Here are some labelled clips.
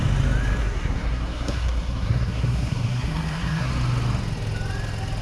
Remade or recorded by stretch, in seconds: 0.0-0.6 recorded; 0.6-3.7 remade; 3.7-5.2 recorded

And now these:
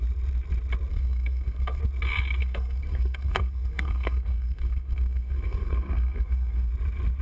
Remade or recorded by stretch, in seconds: 0.0-0.9 recorded; 0.9-1.8 remade; 1.8-2.4 recorded; 2.4-6.7 remade; 6.7-7.2 recorded

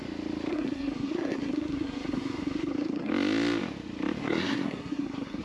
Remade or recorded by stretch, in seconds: 0.0-0.5 recorded; 0.5-3.1 remade; 3.1-4.2 recorded; 4.2-5.4 remade

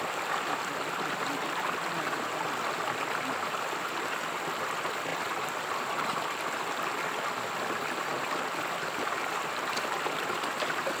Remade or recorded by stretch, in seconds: 0.0-11.0 recorded